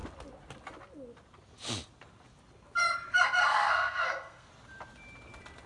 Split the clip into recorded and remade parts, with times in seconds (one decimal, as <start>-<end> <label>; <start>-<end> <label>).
0.0-3.5 recorded; 3.5-4.5 remade; 4.5-5.7 recorded